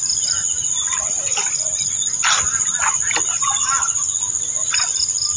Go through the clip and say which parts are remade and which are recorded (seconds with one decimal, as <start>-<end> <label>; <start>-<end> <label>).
0.0-5.4 recorded